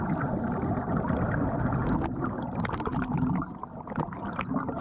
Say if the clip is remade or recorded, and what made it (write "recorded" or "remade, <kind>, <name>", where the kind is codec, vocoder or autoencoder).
recorded